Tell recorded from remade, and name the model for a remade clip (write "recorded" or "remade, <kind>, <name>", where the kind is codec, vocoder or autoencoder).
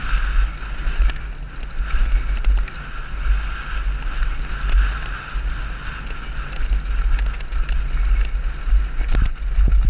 recorded